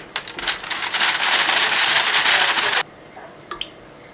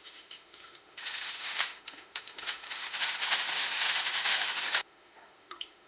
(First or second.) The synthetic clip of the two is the second